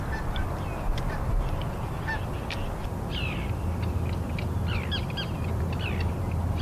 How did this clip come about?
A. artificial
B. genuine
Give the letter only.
B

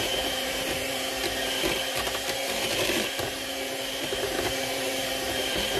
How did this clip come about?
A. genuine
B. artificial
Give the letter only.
B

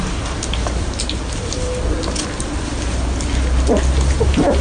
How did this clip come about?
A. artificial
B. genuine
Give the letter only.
B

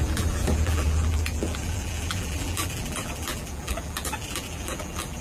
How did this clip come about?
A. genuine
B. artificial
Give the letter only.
B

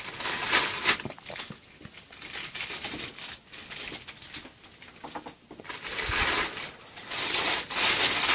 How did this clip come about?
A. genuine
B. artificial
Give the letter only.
A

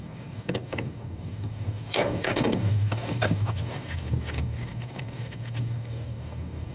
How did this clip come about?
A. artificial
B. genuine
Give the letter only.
A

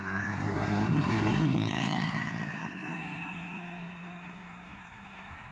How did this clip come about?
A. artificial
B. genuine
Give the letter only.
A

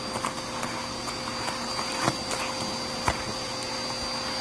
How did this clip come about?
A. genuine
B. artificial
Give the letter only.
A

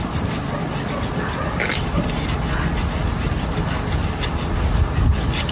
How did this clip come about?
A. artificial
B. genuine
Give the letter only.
B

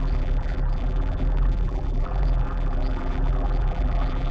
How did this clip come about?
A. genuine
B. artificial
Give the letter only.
B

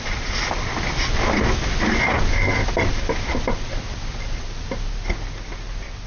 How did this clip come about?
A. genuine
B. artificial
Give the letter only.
A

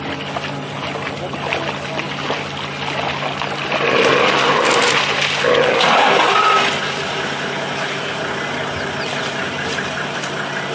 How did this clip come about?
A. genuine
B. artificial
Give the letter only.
A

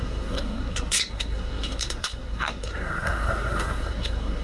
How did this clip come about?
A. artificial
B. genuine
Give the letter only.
A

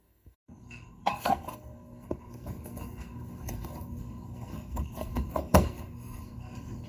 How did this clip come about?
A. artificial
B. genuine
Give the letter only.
A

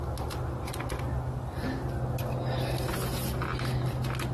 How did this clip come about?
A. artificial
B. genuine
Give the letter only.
B